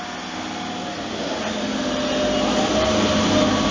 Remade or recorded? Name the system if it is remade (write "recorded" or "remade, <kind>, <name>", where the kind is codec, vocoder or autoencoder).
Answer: recorded